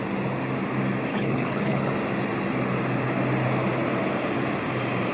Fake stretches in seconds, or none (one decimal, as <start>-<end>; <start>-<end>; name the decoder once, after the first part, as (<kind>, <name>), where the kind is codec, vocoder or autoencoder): 1.1-1.9 (codec, HILCodec)